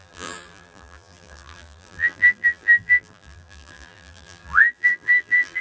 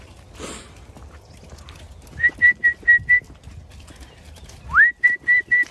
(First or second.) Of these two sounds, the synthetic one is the first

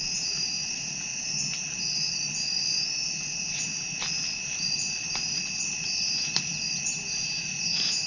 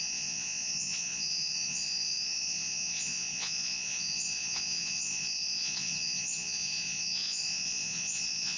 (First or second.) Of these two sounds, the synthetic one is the second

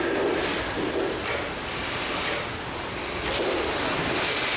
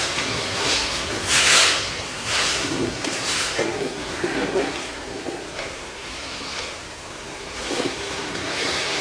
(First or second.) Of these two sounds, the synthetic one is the second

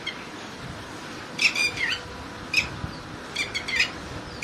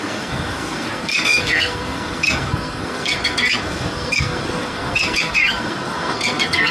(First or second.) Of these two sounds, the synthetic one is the second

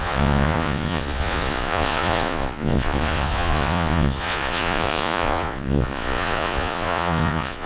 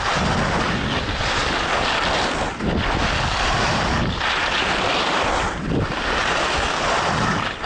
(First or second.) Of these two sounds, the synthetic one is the first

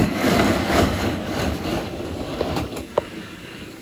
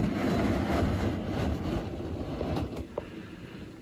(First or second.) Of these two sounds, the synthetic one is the first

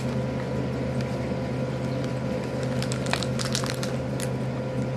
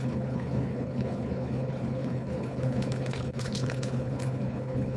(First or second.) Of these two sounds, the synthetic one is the second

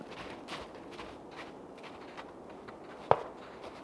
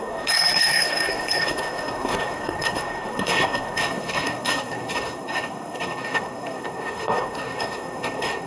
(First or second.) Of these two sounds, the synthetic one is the second